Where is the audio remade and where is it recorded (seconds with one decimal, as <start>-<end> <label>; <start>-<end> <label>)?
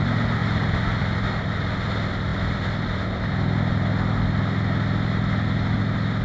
0.0-6.2 recorded